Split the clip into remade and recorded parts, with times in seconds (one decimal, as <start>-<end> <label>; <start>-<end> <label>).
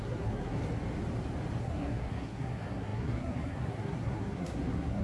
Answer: 0.0-0.6 remade; 0.6-1.6 recorded; 1.6-5.0 remade